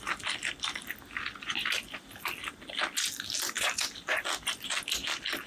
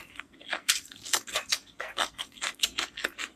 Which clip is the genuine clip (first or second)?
first